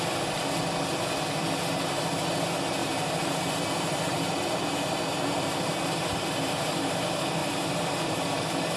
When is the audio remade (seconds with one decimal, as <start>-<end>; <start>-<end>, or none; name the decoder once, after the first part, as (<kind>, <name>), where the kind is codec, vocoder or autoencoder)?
2.8-6.9 (vocoder, BigVGAN v2); 7.4-8.8